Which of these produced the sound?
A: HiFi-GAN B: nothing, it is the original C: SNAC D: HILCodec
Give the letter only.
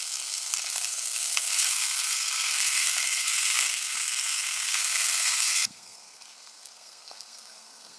C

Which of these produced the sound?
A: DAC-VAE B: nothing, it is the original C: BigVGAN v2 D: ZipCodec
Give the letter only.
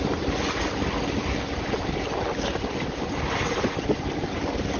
B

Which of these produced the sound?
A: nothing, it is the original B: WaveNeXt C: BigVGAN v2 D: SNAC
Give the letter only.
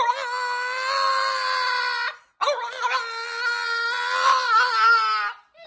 A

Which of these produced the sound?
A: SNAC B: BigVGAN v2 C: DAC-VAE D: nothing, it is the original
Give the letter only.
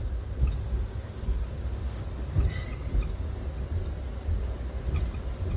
D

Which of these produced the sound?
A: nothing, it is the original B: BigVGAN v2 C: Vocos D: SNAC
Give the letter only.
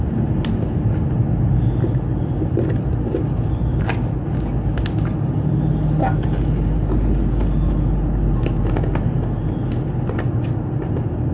A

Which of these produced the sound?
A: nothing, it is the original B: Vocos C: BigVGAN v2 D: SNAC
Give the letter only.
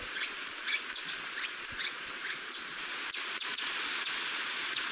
B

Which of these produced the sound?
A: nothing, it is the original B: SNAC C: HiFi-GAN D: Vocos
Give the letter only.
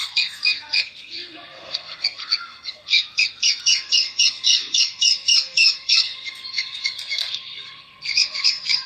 B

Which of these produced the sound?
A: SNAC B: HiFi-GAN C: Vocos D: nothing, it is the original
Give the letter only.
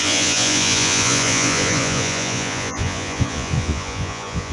C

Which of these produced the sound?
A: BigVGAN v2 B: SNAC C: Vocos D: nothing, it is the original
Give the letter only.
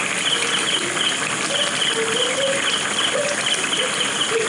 D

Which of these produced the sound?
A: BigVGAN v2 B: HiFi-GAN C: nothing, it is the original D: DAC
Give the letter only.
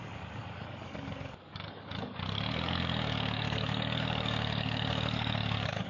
D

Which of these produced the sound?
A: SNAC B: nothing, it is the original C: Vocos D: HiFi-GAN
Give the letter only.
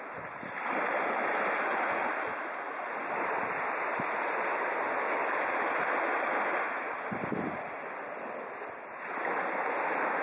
B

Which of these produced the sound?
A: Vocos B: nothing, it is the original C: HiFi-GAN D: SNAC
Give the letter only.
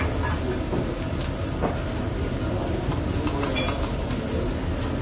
B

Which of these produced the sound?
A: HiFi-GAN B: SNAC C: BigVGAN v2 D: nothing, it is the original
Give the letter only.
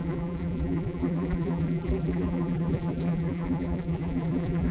C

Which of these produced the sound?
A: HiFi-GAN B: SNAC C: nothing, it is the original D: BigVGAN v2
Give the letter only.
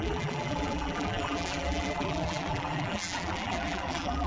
D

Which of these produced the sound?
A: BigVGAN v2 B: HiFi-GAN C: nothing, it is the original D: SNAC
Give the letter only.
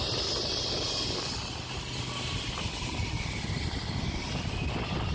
C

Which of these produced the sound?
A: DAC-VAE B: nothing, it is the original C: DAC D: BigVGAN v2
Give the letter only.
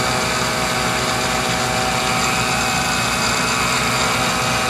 B